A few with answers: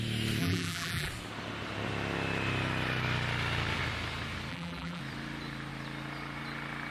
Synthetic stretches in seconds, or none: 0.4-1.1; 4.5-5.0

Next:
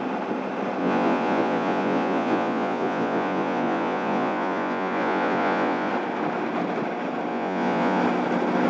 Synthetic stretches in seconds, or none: 0.8-5.9; 7.3-8.0

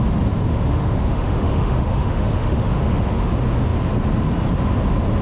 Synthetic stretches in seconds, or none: 0.5-3.3

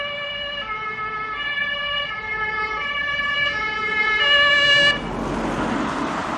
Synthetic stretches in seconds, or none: none

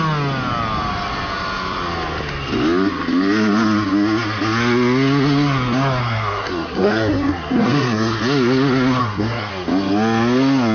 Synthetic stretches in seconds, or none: 6.0-8.2; 9.0-9.5

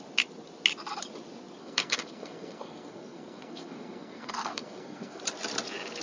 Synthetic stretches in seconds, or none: 1.6-5.2

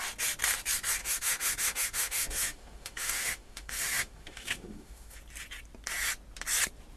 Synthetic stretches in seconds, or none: 1.0-5.2

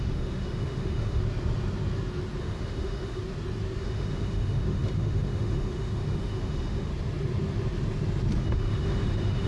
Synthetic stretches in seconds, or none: 0.0-1.2; 2.4-3.2; 3.8-6.9; 8.4-9.5